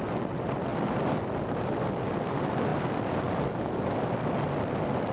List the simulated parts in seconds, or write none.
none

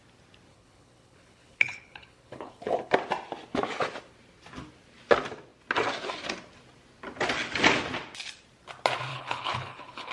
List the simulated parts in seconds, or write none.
0.5-2.9; 9.1-10.1

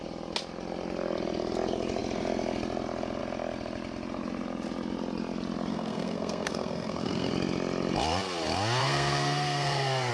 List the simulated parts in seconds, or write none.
5.7-7.3; 8.8-10.1

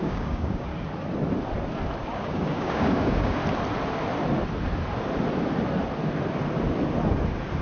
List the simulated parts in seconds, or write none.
0.0-0.7; 2.0-3.4

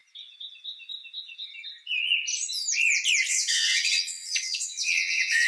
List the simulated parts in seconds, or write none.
3.3-5.5

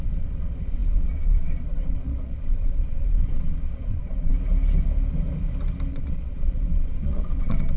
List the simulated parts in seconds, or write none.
0.0-4.3; 5.9-7.8

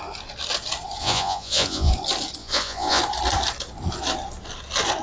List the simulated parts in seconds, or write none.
1.0-1.9; 2.4-3.0

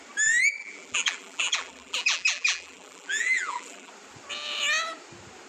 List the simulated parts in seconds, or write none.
0.6-3.9